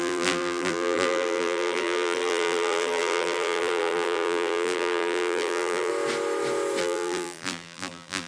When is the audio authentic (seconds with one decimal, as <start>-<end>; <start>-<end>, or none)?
5.9-6.8